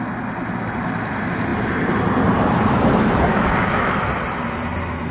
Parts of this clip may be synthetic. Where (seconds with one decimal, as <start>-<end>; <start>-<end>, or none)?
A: 3.3-3.9